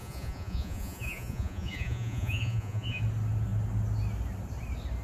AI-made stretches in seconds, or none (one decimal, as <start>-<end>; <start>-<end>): 0.0-3.0